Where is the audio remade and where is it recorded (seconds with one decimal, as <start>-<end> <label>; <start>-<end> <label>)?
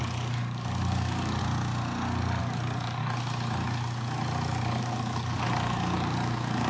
0.0-1.4 remade; 1.4-2.4 recorded; 2.4-3.0 remade; 3.0-4.8 recorded; 4.8-6.7 remade